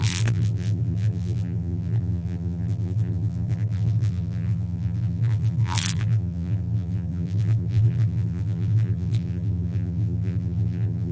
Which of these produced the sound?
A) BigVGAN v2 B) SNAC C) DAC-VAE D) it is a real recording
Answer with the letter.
A